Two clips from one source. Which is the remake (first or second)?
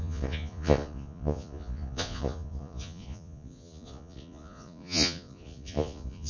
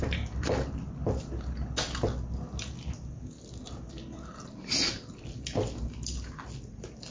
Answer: first